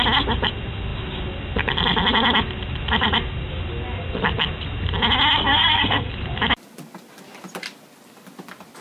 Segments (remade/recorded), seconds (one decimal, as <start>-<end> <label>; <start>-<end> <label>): 0.0-5.4 recorded; 5.4-6.1 remade; 6.1-8.8 recorded